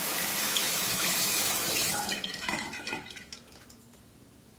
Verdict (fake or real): fake